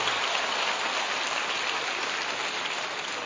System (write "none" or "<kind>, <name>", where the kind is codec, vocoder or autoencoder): none